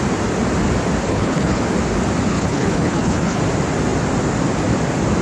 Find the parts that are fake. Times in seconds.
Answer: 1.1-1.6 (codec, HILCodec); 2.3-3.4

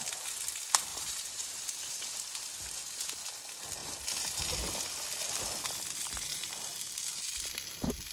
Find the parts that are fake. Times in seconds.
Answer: 0.9-1.6 (vocoder, BigVGAN v2)